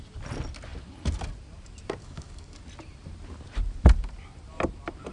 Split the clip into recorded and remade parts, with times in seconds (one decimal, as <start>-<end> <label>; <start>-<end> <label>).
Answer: 0.0-2.0 recorded; 2.0-2.6 remade; 2.6-5.1 recorded